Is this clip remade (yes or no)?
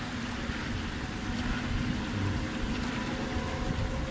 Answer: no